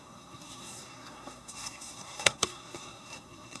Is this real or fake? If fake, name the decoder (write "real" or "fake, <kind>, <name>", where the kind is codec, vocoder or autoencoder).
fake, codec, SNAC